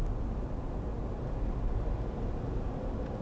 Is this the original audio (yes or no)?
yes